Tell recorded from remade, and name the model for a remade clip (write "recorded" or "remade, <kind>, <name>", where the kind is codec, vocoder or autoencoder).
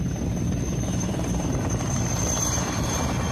remade, vocoder, BigVGAN v2